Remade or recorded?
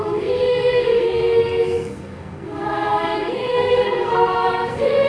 remade